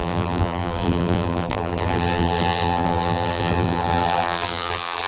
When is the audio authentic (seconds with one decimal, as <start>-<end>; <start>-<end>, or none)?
none